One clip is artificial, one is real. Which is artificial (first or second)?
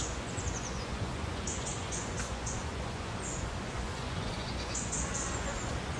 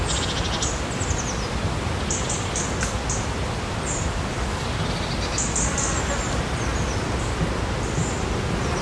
first